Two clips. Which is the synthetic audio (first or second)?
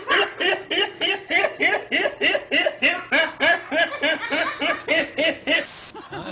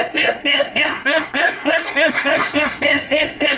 second